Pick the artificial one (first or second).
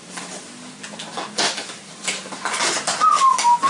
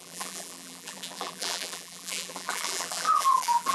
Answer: second